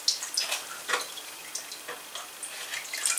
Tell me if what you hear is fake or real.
real